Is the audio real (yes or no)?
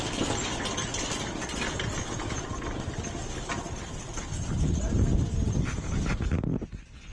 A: yes